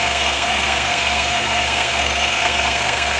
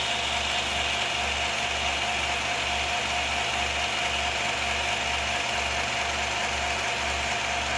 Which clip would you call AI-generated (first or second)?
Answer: first